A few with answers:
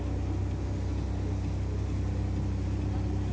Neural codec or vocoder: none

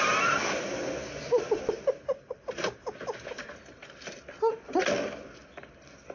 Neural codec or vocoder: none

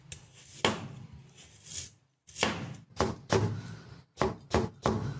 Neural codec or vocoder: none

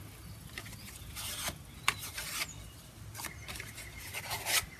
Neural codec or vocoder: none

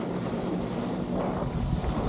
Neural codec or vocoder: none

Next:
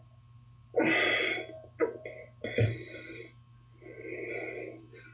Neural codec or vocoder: none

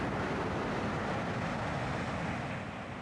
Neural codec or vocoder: none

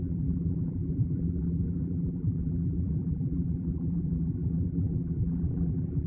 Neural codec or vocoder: vocoder, BigVGAN v2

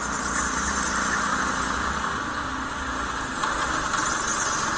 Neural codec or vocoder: none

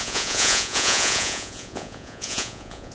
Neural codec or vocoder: vocoder, Vocos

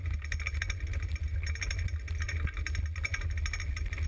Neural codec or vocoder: none